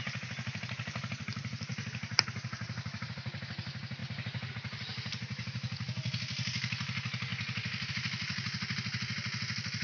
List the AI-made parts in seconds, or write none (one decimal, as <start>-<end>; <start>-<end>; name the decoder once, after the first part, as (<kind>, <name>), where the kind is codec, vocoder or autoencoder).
4.0-4.5 (vocoder, BigVGAN v2)